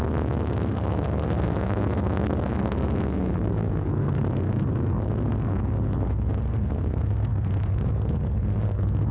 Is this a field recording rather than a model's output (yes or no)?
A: no